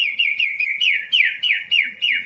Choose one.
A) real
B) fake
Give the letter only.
B